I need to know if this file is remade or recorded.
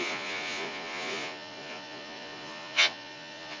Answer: remade